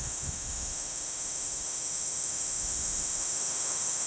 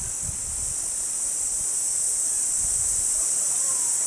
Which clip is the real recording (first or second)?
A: second